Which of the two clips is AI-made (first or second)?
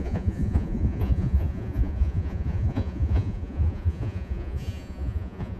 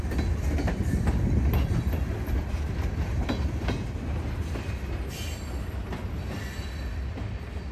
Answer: first